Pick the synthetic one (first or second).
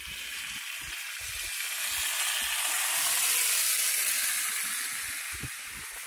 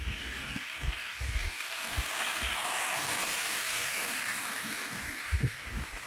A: second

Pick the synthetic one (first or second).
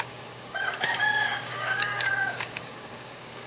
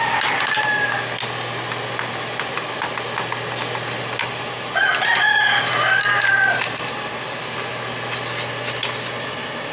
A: first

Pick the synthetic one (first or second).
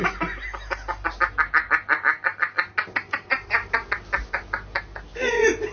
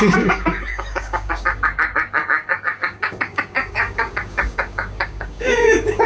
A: second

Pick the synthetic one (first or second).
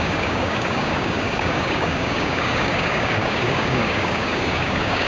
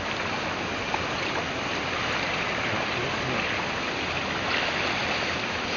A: first